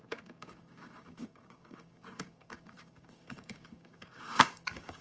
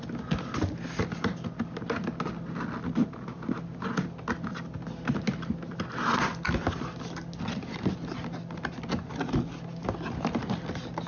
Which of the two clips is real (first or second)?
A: second